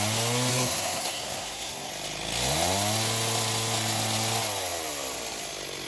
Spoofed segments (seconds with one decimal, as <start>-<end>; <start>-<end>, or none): 0.5-1.9